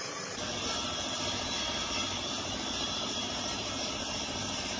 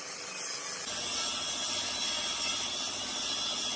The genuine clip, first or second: second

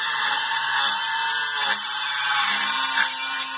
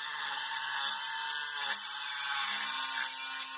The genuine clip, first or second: second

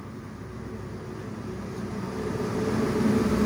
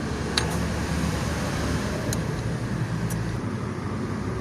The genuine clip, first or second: first